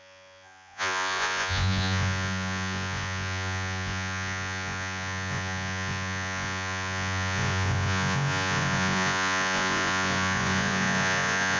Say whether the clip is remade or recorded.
remade